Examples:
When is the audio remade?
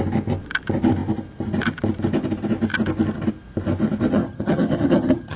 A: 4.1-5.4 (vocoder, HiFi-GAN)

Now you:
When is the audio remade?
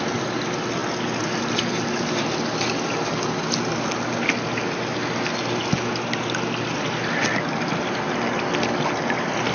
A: none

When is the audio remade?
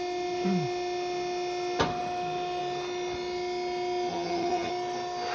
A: 4.1-4.7 (vocoder, HiFi-GAN)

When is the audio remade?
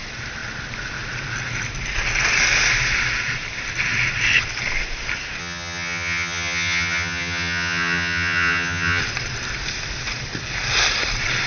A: 5.4-9.0 (vocoder, HiFi-GAN)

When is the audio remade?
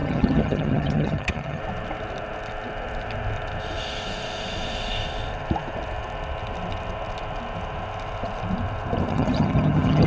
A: 0.0-1.6 (vocoder, HiFi-GAN); 9.1-10.1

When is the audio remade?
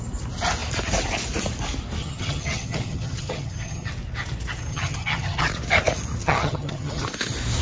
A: 2.0-3.9 (vocoder, HiFi-GAN); 4.7-5.4; 6.2-7.0